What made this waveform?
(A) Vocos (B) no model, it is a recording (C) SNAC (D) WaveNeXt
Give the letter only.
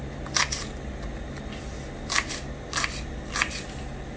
B